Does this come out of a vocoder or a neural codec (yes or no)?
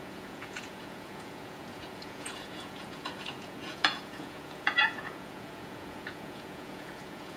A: yes